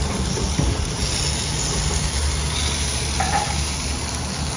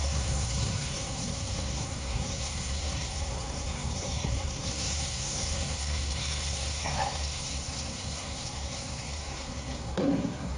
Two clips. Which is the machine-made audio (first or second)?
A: second